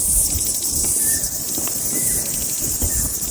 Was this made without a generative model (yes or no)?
no